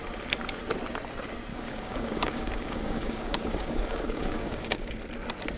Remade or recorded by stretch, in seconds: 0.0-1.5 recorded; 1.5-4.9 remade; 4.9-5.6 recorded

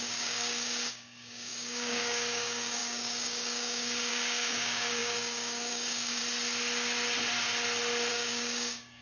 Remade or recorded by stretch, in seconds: 0.0-6.2 remade; 6.2-8.1 recorded; 8.1-9.0 remade